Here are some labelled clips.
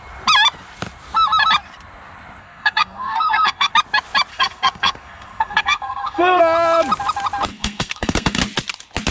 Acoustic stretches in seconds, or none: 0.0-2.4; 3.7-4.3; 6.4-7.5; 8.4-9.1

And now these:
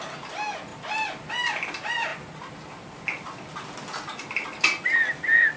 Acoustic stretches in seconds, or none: 0.0-5.6

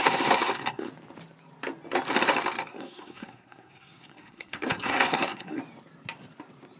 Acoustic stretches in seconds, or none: 0.9-2.7; 5.6-6.8

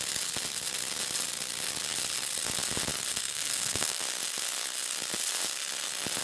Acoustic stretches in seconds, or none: 0.0-3.1; 4.0-6.2

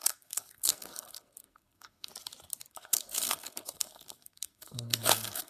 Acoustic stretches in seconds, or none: 2.1-2.7

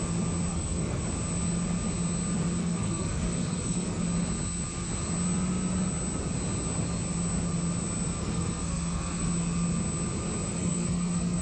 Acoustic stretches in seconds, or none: 0.0-0.5; 1.0-2.6; 4.0-8.2; 9.3-10.5

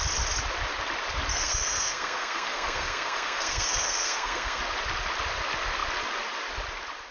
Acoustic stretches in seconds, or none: 0.0-1.3; 4.6-7.1